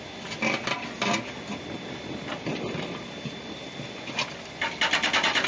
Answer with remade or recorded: recorded